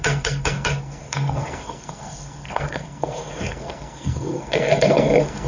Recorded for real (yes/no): no